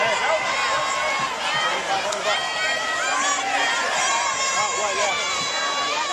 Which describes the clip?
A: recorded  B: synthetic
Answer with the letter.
B